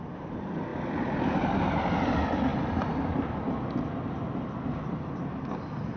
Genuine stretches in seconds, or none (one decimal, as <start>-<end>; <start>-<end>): 0.0-6.0